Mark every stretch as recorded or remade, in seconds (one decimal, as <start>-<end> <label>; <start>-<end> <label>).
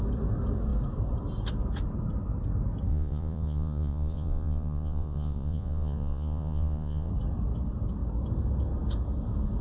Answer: 0.0-2.9 recorded; 2.9-7.1 remade; 7.1-9.6 recorded